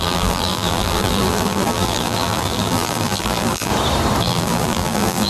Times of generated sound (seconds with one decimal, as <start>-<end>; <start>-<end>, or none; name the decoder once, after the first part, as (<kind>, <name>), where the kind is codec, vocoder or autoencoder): 0.0-3.7 (vocoder, BigVGAN v2); 4.2-5.3